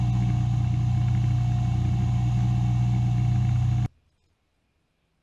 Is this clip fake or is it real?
real